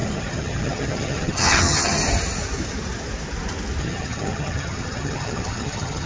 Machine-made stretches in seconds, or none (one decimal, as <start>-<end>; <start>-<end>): 0.0-2.0; 3.8-6.1